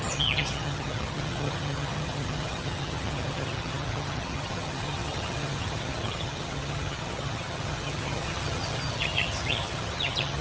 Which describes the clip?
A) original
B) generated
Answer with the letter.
B